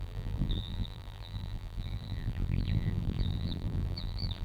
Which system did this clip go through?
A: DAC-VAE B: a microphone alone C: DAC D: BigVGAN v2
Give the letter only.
D